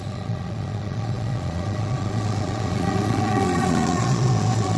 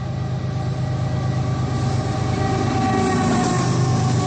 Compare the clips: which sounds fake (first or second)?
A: first